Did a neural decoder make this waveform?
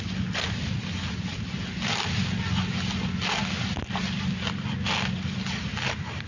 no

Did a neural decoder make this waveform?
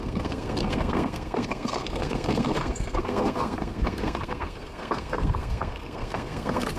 yes